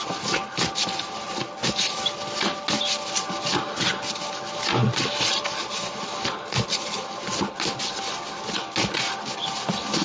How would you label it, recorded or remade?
recorded